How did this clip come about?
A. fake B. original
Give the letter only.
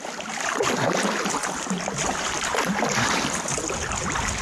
B